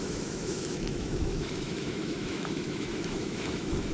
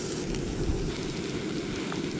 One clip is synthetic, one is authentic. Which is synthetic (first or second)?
first